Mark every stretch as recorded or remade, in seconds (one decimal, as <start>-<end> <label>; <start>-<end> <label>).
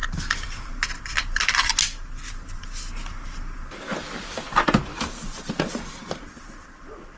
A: 0.0-1.7 remade; 1.7-6.0 recorded; 6.0-7.2 remade